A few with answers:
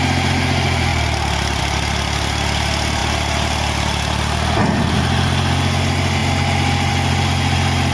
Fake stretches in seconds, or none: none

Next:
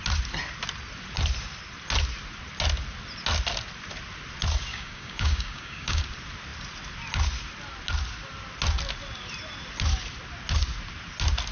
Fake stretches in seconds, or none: 4.7-6.0 (codec, DAC)

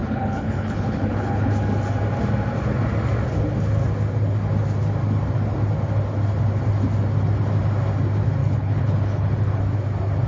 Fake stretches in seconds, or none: 0.0-1.5 (codec, HILCodec); 8.4-9.6

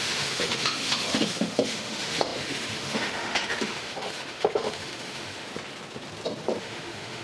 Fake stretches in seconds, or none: 0.0-5.5 (autoencoder, DAC-VAE); 6.6-7.2

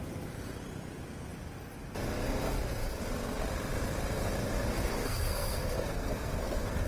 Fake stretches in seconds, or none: 5.0-6.9 (codec, SNAC)

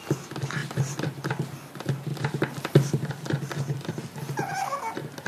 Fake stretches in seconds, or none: 2.1-3.9 (vocoder, BigVGAN v2)

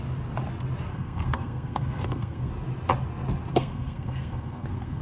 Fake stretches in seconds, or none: 0.9-2.5 (codec, SNAC); 3.5-5.0